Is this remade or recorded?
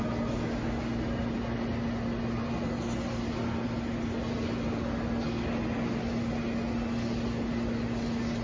recorded